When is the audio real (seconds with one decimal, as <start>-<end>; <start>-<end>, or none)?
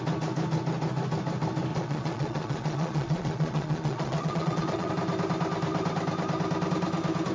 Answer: 0.0-1.7; 4.9-7.3